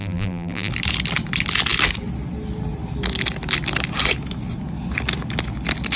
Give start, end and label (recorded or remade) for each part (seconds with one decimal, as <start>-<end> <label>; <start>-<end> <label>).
0.0-0.7 remade; 0.7-6.0 recorded